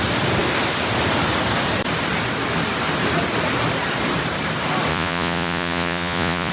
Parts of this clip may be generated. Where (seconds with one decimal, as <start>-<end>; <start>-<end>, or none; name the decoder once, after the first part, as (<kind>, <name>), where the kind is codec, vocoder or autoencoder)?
4.9-6.5 (vocoder, Vocos)